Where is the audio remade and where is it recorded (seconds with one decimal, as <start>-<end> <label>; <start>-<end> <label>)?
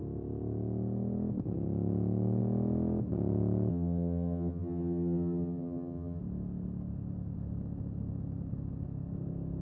0.0-3.7 recorded; 3.7-6.2 remade; 6.2-9.6 recorded